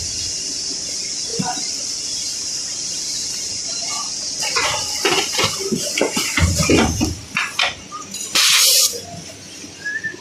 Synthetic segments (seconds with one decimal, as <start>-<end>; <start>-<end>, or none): none